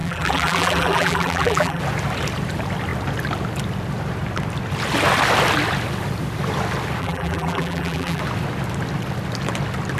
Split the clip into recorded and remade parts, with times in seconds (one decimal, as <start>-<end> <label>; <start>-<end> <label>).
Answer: 0.0-1.8 remade; 1.8-7.0 recorded; 7.0-8.2 remade; 8.2-10.0 recorded